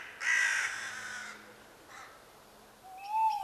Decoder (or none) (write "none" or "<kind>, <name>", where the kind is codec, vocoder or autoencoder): none